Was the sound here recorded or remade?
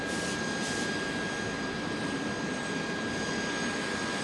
recorded